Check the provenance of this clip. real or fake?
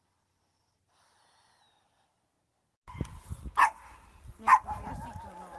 real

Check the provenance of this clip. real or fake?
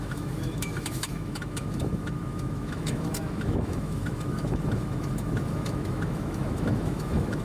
fake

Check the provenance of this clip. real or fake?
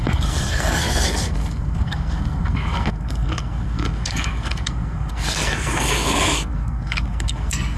fake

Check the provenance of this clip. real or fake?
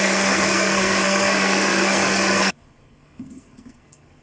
fake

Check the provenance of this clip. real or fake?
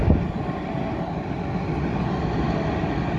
real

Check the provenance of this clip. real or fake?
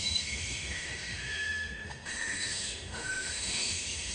fake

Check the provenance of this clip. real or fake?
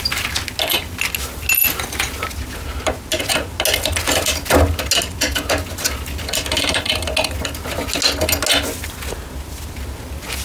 real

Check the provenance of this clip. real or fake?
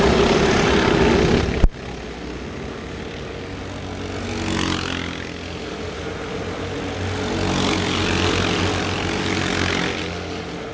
real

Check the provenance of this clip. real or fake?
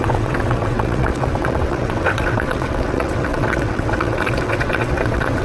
fake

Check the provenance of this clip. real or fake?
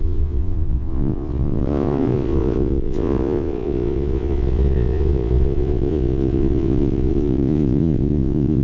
fake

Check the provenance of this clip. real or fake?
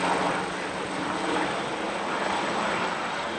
real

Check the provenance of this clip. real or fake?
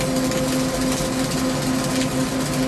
real